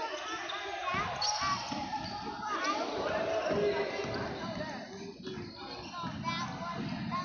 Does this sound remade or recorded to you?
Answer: recorded